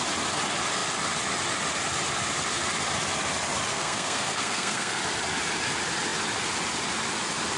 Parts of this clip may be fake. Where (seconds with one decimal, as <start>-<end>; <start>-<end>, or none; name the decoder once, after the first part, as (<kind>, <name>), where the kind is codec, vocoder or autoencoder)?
3.7-5.0 (codec, SNAC)